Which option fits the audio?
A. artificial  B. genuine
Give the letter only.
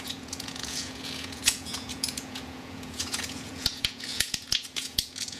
A